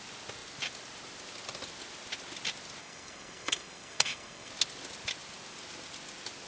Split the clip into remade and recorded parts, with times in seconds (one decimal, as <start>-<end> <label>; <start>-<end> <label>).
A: 0.0-2.8 recorded; 2.8-4.5 remade; 4.5-6.5 recorded